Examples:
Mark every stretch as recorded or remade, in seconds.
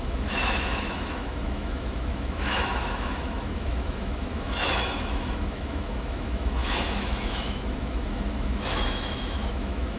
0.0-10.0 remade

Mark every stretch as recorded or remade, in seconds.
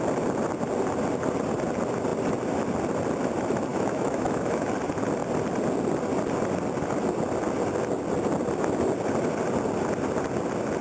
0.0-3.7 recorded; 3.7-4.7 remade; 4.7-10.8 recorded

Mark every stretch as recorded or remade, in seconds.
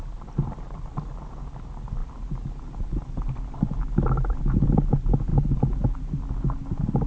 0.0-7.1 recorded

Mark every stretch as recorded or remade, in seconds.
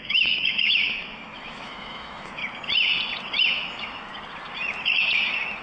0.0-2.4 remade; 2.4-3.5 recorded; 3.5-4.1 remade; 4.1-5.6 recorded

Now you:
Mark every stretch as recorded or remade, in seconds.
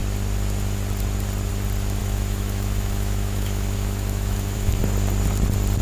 0.0-2.0 recorded; 2.0-4.8 remade; 4.8-5.8 recorded